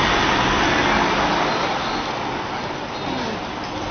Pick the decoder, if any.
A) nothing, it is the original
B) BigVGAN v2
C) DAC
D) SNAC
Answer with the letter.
A